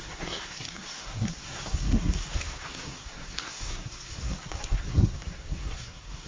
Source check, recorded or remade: remade